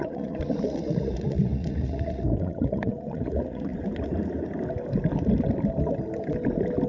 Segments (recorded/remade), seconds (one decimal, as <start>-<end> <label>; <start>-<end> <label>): 0.0-3.7 remade; 3.7-6.9 recorded